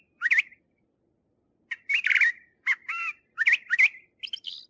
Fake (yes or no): no